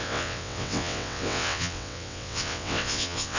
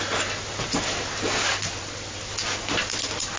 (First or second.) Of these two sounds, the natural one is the second